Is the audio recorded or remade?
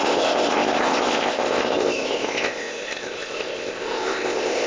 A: remade